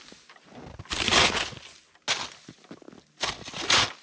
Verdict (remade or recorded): recorded